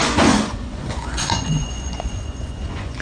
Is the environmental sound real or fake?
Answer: fake